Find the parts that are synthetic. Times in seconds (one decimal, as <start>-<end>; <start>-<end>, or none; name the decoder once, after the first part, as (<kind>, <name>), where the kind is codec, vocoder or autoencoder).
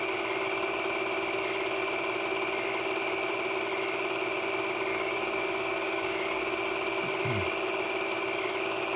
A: 4.9-6.6 (codec, DAC)